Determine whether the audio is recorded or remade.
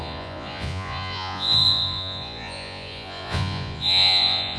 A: remade